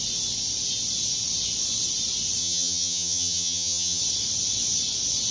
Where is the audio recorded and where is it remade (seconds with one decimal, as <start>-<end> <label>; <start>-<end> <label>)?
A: 0.0-2.4 recorded; 2.4-4.0 remade; 4.0-5.3 recorded

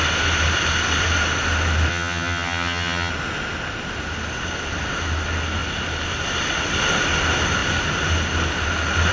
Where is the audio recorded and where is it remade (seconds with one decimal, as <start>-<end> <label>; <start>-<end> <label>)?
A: 0.0-1.9 recorded; 1.9-3.1 remade; 3.1-9.1 recorded

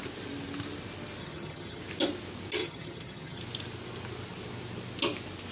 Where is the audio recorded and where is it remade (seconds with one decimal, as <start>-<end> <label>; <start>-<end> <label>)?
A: 0.0-1.2 recorded; 1.2-1.8 remade; 1.8-2.6 recorded; 2.6-3.4 remade; 3.4-5.5 recorded